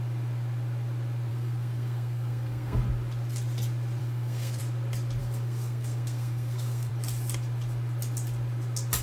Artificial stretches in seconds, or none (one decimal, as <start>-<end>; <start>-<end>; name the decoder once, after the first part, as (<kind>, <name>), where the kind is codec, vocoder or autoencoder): 1.3-2.8 (codec, SNAC); 4.0-4.6; 5.2-6.9